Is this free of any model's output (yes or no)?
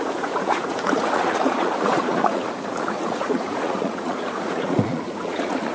no